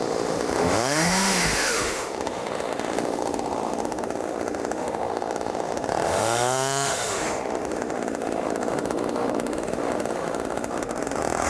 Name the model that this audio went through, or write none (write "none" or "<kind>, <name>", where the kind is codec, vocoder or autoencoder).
autoencoder, DAC-VAE